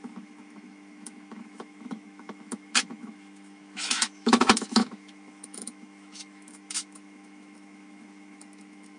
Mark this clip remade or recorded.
remade